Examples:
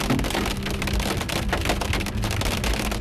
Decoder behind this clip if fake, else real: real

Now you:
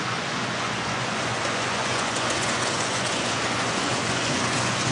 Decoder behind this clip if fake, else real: fake, vocoder, Vocos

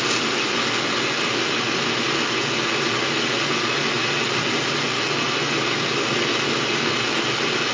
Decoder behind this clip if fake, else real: real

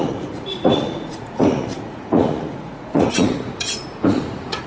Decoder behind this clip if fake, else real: fake, vocoder, Vocos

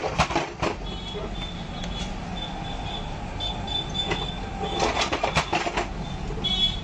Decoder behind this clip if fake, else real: real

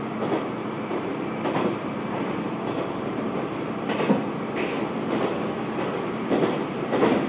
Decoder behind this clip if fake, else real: real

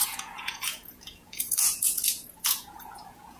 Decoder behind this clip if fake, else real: fake, vocoder, Vocos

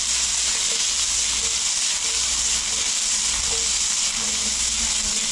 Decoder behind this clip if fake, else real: real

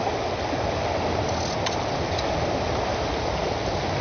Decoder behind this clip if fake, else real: real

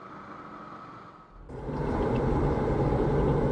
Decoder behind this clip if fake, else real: real